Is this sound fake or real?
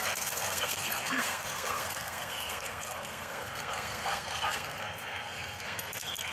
fake